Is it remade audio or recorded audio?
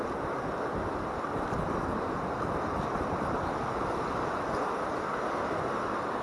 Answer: recorded